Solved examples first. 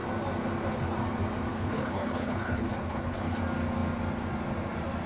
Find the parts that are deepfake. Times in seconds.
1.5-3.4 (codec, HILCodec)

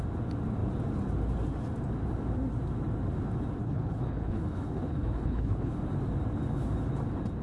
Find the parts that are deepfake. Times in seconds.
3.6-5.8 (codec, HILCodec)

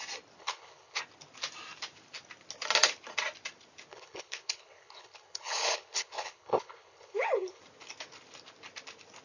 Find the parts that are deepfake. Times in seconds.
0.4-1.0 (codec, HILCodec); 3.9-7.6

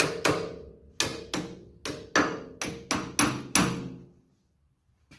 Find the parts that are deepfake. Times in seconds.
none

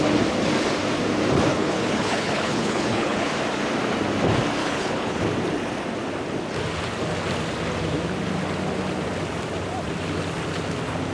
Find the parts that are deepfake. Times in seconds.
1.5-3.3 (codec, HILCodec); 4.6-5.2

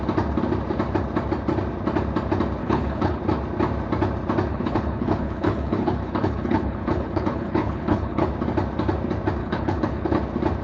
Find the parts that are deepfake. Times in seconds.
2.6-3.2 (codec, HILCodec); 4.5-8.3; 9.4-10.2

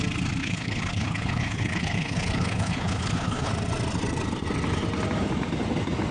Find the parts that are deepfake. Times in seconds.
0.4-3.5 (codec, HILCodec)